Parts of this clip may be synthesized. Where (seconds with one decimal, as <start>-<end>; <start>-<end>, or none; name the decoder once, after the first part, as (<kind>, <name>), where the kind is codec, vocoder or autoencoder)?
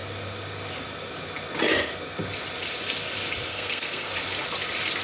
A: 3.5-4.1 (codec, SNAC)